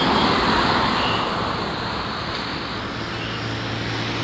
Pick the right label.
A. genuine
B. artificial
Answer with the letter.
A